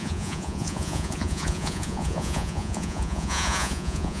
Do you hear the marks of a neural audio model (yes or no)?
yes